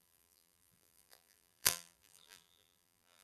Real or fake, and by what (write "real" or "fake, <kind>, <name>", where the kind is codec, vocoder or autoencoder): fake, vocoder, BigVGAN v2